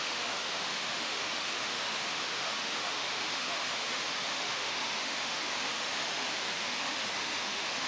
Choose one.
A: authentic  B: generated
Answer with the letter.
B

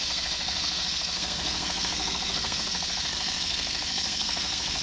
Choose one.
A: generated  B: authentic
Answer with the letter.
A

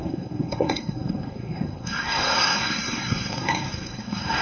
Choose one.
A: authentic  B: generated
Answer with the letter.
B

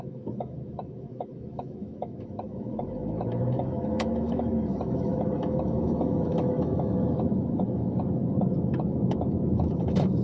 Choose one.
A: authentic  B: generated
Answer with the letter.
B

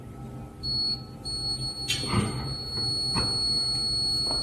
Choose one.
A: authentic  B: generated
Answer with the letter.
A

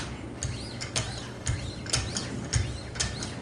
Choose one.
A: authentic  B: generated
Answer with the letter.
A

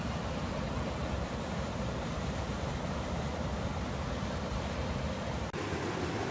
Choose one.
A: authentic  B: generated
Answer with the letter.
A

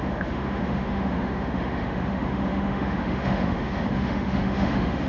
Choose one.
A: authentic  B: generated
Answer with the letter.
B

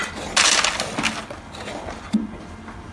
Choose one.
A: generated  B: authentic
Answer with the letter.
B